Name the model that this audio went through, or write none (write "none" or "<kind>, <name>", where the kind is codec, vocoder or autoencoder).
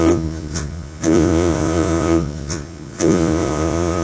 vocoder, Vocos